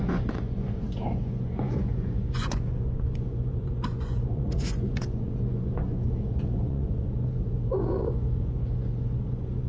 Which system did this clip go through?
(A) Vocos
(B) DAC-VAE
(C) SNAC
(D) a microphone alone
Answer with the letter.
A